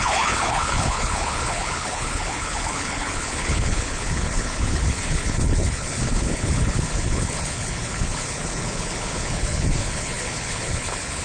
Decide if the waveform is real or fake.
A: fake